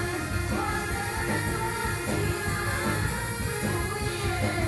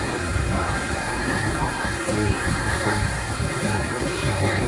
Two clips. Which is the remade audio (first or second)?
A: second